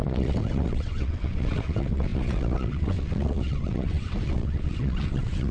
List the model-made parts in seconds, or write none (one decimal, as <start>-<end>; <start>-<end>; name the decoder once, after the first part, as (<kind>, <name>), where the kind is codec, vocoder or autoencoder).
0.0-5.5 (vocoder, WaveNeXt)